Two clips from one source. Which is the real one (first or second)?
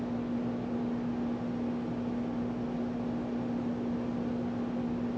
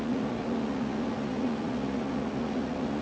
first